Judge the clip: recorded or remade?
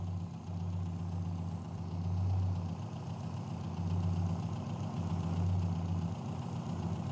recorded